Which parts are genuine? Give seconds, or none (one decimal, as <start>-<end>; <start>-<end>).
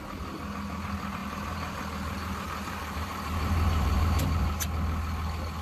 0.0-1.2; 4.6-5.6